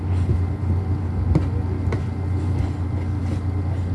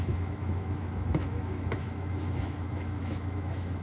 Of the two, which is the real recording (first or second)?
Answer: first